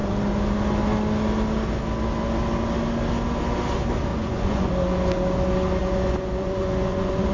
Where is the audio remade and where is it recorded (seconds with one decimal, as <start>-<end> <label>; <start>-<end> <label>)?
0.0-4.1 recorded; 4.1-4.7 remade; 4.7-5.8 recorded; 5.8-7.3 remade